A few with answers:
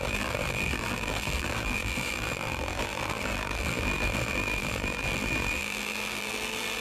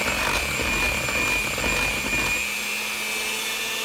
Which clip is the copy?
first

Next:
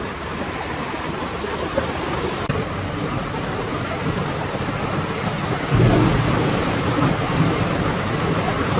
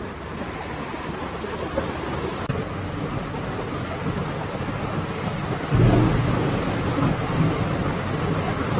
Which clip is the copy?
first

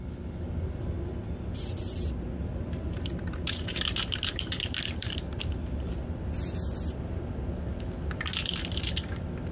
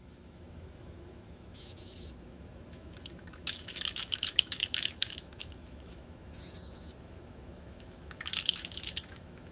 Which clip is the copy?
second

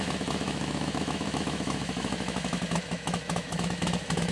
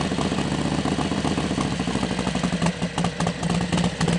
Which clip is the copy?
first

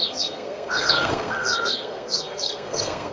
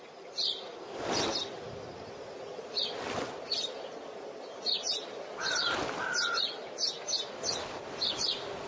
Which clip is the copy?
first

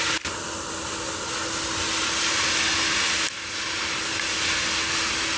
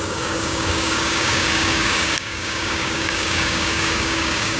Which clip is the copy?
second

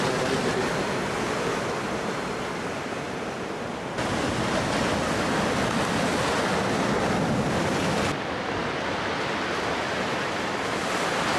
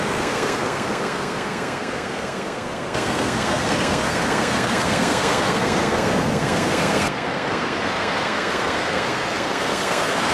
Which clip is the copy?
second